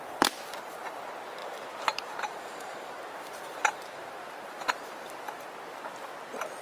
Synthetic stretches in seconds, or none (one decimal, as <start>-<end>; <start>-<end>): 1.4-5.4